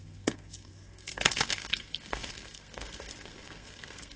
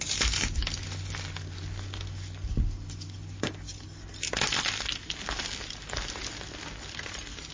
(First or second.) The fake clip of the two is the first